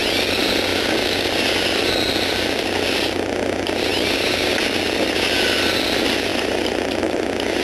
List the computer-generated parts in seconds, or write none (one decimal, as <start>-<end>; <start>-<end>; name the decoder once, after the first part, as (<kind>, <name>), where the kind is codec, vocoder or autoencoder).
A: 3.9-4.5 (vocoder, BigVGAN v2); 6.3-7.0